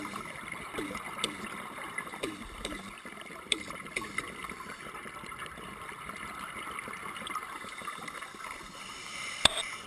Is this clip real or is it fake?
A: fake